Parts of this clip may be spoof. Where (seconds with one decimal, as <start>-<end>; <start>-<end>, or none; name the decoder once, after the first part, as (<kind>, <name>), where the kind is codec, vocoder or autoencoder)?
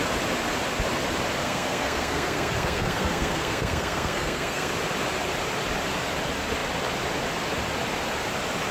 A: 1.4-4.7 (codec, SNAC)